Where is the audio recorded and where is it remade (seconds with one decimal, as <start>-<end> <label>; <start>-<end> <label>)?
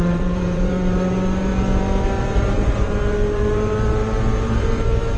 0.0-1.5 remade; 1.5-2.2 recorded; 2.2-5.2 remade